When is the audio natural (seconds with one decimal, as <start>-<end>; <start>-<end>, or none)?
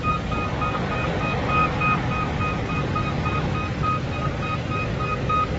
0.0-5.6